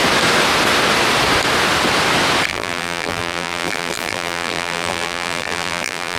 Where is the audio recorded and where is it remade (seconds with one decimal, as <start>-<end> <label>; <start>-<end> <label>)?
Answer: 0.0-2.5 recorded; 2.5-6.2 remade